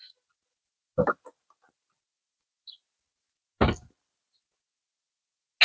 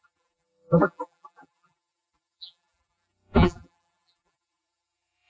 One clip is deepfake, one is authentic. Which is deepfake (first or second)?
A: second